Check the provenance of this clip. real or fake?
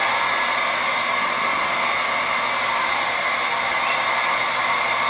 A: real